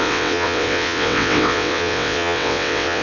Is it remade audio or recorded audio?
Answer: remade